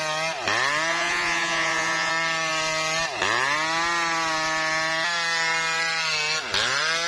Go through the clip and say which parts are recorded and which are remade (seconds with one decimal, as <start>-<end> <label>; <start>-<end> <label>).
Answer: 0.0-0.9 recorded; 0.9-2.1 remade; 2.1-7.1 recorded